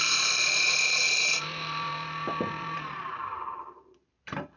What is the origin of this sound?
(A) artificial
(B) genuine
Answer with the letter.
A